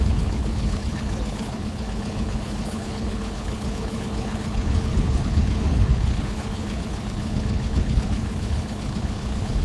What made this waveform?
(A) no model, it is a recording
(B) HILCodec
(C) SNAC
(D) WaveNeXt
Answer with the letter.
B